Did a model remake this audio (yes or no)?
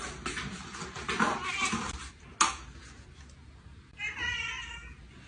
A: no